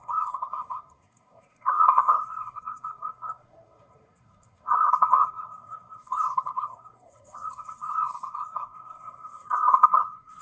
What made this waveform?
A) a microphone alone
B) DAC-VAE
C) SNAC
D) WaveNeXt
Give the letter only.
C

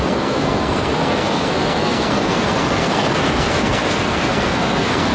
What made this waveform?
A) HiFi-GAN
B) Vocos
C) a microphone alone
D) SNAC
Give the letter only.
D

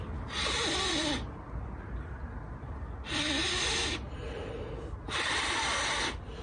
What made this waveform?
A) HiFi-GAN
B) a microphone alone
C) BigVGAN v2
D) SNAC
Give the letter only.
B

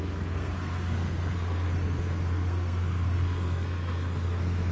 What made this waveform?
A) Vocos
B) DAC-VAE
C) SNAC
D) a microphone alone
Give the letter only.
C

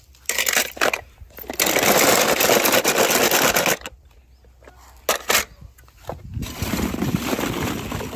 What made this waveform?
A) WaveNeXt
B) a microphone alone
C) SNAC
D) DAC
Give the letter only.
B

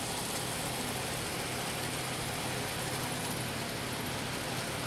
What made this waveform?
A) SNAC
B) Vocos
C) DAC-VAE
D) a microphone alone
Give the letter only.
D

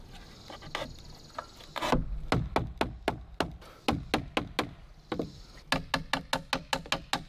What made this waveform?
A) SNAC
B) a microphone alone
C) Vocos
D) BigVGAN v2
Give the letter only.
B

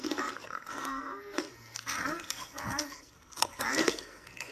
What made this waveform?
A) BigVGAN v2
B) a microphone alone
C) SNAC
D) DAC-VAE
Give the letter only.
C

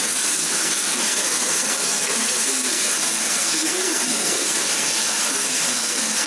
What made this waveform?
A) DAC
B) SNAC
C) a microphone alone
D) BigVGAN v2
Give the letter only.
B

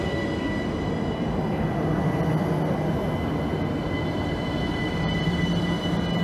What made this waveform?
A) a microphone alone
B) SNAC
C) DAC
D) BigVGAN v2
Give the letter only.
A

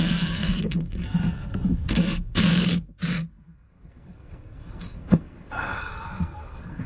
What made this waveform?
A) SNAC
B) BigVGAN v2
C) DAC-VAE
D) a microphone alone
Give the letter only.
A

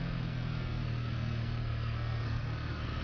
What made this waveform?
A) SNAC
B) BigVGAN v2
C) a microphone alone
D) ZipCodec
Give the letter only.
A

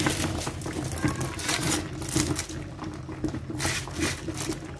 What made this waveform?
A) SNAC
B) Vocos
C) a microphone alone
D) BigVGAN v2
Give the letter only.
C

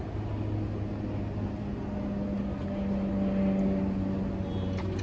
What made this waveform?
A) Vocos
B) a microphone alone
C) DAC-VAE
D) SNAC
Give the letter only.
B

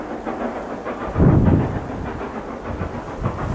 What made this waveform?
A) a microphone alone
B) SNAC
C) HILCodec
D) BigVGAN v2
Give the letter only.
A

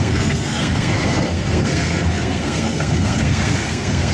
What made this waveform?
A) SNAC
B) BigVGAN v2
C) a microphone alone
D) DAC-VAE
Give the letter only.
A